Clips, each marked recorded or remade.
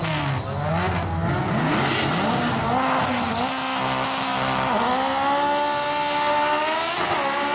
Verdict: recorded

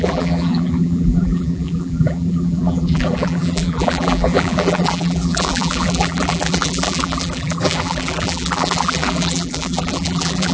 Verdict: remade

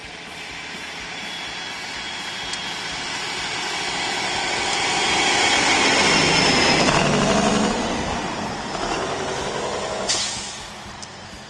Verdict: recorded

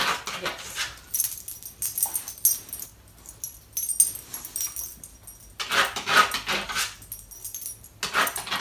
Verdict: recorded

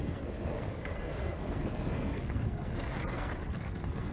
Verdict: remade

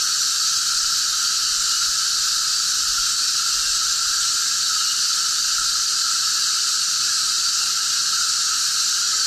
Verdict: recorded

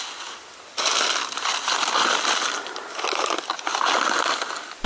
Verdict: recorded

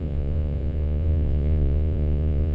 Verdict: remade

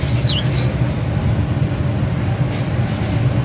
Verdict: recorded